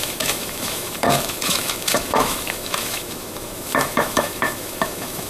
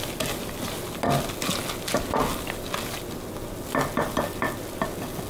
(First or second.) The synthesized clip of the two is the first